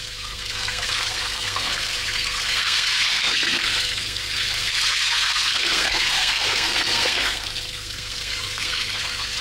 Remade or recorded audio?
remade